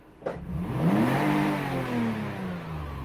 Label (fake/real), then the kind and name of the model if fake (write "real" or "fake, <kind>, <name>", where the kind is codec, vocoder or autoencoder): real